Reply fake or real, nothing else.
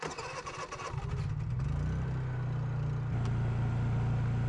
real